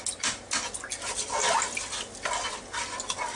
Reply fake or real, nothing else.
real